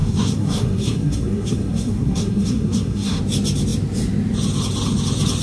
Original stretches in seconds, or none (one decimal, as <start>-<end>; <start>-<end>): 3.2-5.4